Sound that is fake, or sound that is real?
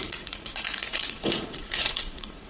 fake